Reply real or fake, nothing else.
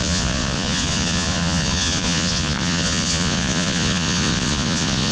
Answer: fake